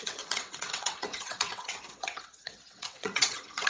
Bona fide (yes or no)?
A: no